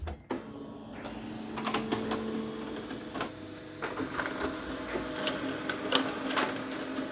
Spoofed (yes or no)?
no